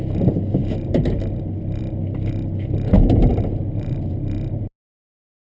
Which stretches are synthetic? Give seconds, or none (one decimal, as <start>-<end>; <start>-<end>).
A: 3.3-4.2